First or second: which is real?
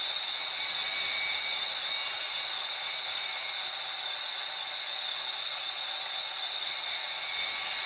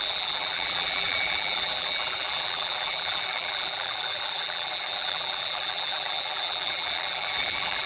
first